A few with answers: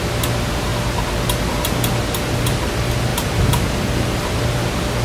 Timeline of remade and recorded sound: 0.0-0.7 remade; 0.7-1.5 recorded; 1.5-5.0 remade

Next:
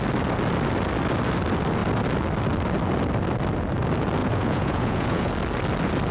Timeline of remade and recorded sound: 0.0-4.2 recorded; 4.2-5.3 remade; 5.3-6.1 recorded

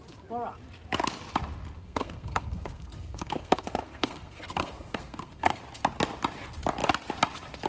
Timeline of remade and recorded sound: 0.0-1.8 recorded; 1.8-5.6 remade; 5.6-7.7 recorded

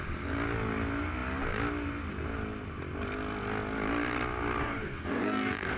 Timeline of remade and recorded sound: 0.0-4.6 recorded; 4.6-5.8 remade

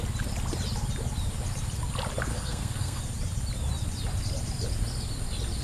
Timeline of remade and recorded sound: 0.0-2.3 recorded; 2.3-3.0 remade; 3.0-5.6 recorded